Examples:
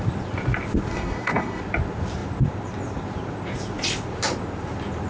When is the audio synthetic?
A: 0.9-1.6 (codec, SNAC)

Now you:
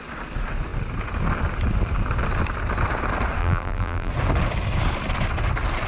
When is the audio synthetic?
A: 3.4-4.1 (vocoder, BigVGAN v2)

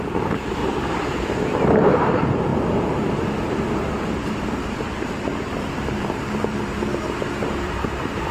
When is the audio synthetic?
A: 0.0-0.6 (vocoder, BigVGAN v2); 1.6-8.3

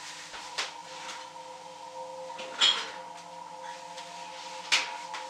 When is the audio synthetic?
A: none

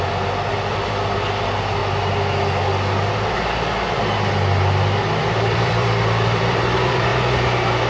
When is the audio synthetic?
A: 0.0-1.8 (vocoder, BigVGAN v2); 5.2-7.1

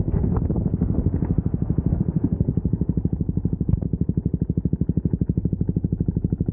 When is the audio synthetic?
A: 0.0-0.4 (codec, SNAC); 1.9-2.5

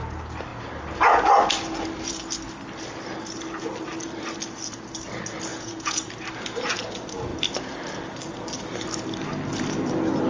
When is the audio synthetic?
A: 5.5-6.1 (vocoder, Vocos)